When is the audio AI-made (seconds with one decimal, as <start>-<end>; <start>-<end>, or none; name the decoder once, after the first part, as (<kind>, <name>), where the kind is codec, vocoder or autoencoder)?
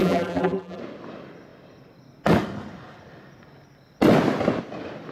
0.0-0.8 (vocoder, BigVGAN v2)